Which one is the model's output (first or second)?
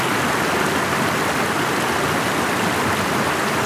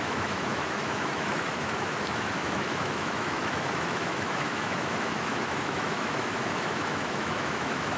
second